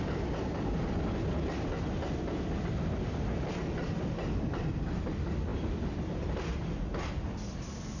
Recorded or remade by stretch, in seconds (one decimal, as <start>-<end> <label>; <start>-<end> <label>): 0.0-8.0 recorded